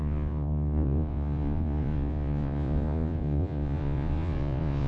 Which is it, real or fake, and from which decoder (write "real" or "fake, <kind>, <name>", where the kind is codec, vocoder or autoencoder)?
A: fake, vocoder, Vocos